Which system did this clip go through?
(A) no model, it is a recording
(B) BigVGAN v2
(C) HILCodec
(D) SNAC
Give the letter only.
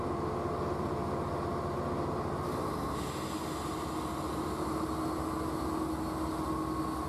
A